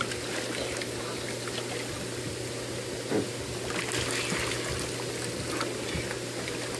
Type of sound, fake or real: real